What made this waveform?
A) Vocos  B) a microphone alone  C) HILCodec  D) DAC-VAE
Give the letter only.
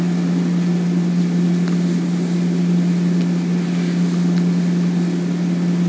B